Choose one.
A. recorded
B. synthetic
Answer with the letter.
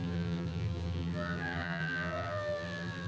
B